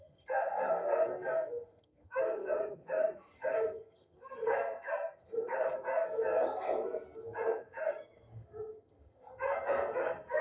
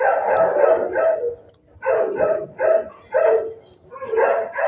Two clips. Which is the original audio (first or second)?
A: second